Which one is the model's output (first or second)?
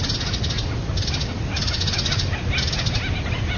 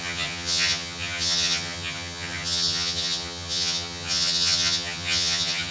second